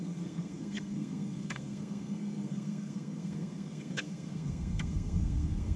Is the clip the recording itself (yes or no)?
no